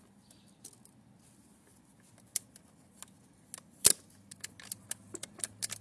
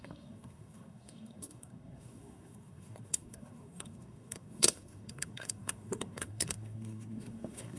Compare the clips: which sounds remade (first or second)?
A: second